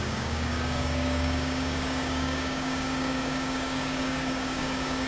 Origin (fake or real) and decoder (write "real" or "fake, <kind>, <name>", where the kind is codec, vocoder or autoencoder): fake, codec, DAC